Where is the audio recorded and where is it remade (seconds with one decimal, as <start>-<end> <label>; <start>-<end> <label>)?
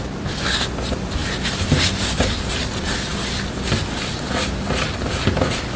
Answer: 0.0-5.8 recorded